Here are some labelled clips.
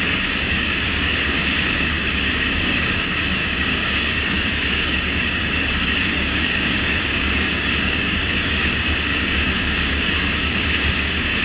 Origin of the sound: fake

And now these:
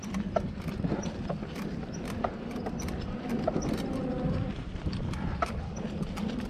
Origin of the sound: fake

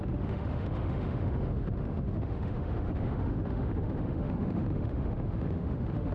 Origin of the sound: fake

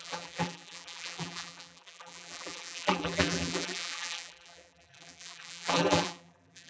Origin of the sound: fake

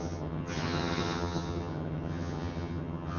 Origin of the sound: fake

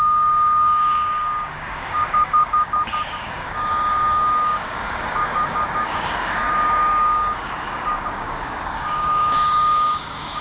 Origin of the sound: fake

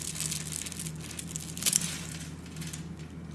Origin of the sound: real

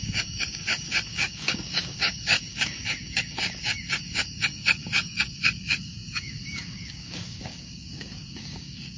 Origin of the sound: fake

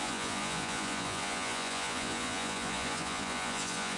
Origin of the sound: fake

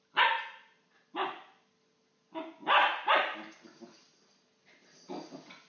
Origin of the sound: real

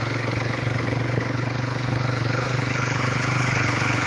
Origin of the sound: fake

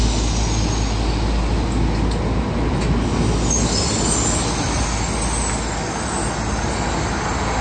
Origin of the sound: real